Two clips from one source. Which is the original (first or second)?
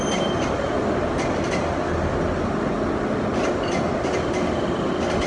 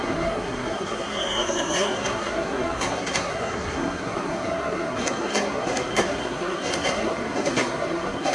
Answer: first